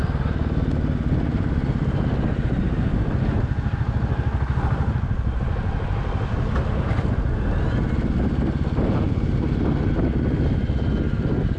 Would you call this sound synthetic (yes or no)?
no